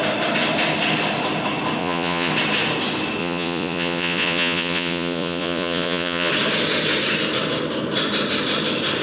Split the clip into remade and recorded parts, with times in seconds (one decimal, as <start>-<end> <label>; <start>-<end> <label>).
0.0-1.8 recorded; 1.8-2.3 remade; 2.3-3.2 recorded; 3.2-6.3 remade; 6.3-9.0 recorded